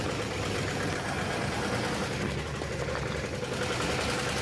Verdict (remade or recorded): recorded